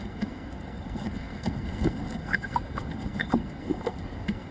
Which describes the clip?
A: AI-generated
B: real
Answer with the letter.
A